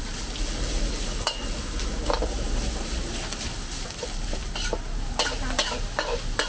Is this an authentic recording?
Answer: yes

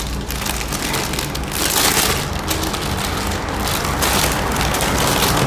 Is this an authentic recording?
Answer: yes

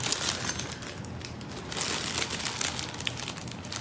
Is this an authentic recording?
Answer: yes